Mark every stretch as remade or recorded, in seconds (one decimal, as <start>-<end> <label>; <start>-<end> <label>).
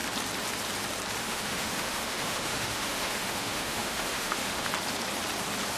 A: 0.0-1.2 recorded; 1.2-4.7 remade; 4.7-5.8 recorded